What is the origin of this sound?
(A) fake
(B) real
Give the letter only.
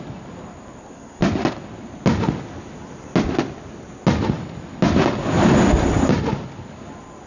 B